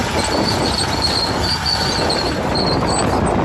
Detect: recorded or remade recorded